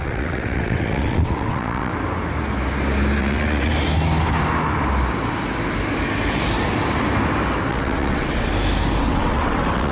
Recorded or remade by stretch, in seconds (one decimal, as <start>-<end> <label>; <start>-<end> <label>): 0.0-1.9 remade; 1.9-3.2 recorded; 3.2-3.7 remade; 3.7-7.7 recorded; 7.7-8.5 remade; 8.5-9.0 recorded; 9.0-9.9 remade